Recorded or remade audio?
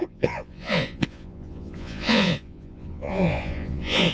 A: remade